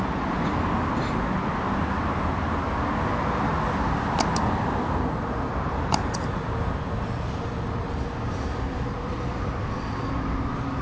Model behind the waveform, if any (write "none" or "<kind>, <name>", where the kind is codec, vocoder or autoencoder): none